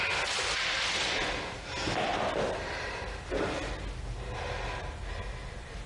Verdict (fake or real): real